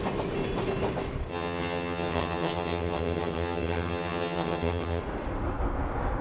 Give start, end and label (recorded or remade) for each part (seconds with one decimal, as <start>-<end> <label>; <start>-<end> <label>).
0.0-1.3 recorded; 1.3-5.0 remade; 5.0-6.2 recorded